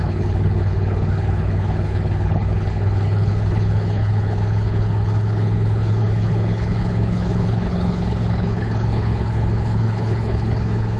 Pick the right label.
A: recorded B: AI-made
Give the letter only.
B